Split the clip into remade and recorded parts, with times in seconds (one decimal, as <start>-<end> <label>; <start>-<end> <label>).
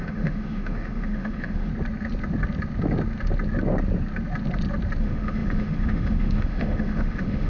0.0-1.7 remade; 1.7-5.0 recorded; 5.0-7.5 remade